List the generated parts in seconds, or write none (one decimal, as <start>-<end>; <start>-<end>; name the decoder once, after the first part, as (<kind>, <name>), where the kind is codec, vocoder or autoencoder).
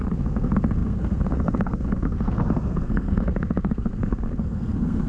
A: 0.0-5.1 (codec, SNAC)